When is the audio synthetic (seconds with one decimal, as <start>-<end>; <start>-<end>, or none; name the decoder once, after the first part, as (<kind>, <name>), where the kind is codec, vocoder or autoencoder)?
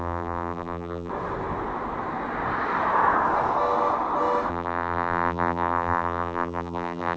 0.0-1.1 (vocoder, BigVGAN v2); 4.5-7.2